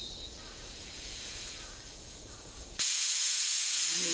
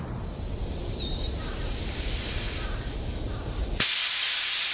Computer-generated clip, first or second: first